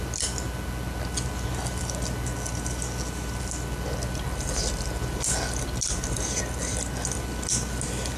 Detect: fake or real real